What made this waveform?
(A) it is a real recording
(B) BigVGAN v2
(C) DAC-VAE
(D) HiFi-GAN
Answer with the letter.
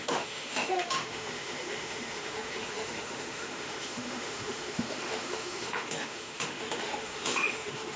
C